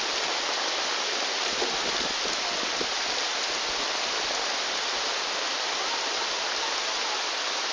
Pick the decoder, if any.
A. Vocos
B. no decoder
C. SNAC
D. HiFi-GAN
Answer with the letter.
B